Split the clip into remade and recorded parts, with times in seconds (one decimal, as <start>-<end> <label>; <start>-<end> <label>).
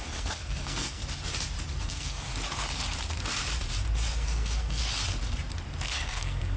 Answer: 0.0-1.0 remade; 1.0-1.8 recorded; 1.8-2.3 remade; 2.3-4.1 recorded; 4.1-4.8 remade; 4.8-5.9 recorded; 5.9-6.6 remade